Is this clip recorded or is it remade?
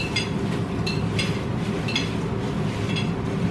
recorded